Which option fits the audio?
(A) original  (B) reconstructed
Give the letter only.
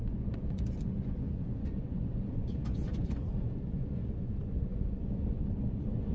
B